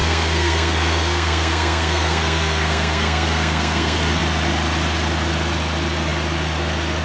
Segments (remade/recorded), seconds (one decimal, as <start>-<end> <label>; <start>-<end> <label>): 0.0-4.2 remade; 4.2-7.0 recorded